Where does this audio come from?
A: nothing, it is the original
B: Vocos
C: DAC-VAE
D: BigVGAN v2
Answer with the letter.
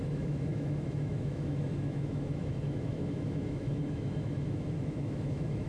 C